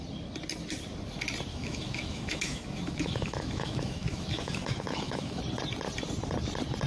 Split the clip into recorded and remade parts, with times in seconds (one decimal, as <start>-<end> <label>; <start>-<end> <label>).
0.0-1.5 recorded; 1.5-5.4 remade; 5.4-6.9 recorded